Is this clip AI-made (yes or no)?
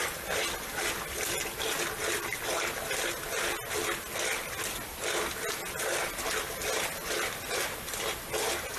no